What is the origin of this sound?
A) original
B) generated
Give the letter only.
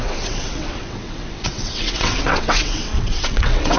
B